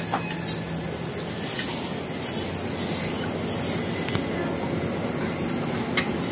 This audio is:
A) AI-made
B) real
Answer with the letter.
B